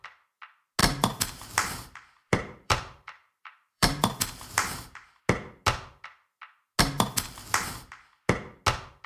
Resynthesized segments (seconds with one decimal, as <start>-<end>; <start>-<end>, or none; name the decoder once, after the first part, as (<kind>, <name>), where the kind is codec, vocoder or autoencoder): 0.8-5.2 (vocoder, BigVGAN v2)